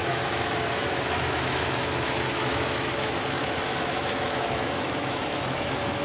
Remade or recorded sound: remade